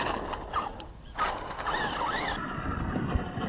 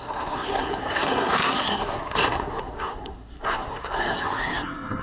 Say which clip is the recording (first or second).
first